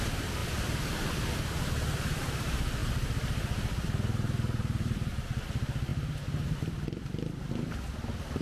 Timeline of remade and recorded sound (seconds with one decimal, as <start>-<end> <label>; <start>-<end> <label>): 0.0-8.4 remade